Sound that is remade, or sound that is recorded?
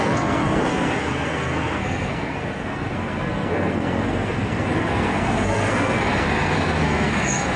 remade